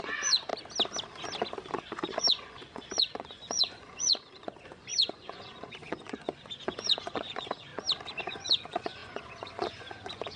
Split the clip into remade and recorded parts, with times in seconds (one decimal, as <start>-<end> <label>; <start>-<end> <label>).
0.0-0.5 remade; 0.5-1.7 recorded; 1.7-7.7 remade; 7.7-8.2 recorded; 8.2-10.4 remade